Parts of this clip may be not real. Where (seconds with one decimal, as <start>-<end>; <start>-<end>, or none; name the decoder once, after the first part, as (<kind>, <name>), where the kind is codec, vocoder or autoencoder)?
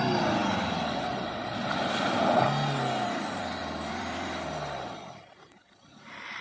0.0-0.4 (vocoder, BigVGAN v2); 3.1-6.4